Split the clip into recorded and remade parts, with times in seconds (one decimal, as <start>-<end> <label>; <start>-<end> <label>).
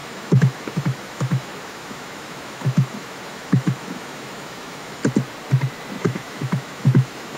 0.0-5.0 remade; 5.0-6.0 recorded; 6.0-7.4 remade